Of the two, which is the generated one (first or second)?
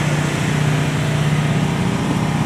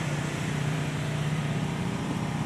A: second